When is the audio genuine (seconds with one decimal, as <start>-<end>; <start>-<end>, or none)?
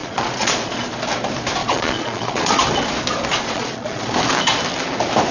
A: 0.8-1.6; 2.6-3.3; 4.1-5.3